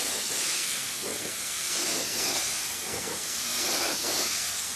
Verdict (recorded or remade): remade